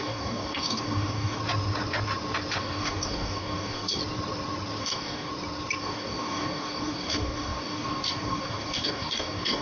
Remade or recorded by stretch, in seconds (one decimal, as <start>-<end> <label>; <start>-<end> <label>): 0.0-1.4 remade; 1.4-2.6 recorded; 2.6-4.0 remade; 4.0-4.8 recorded; 4.8-5.3 remade; 5.3-5.8 recorded; 5.8-9.6 remade